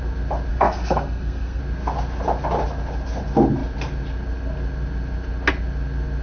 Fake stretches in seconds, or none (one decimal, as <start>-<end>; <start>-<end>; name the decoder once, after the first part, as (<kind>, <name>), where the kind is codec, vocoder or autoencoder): 0.5-1.6 (codec, SNAC)